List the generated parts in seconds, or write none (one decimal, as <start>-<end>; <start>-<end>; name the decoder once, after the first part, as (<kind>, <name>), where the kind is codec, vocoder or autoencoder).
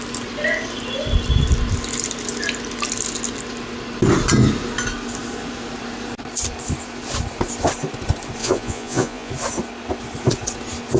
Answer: 8.4-9.3 (vocoder, Vocos)